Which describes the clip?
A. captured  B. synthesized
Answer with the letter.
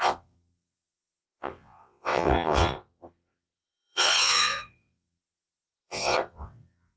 B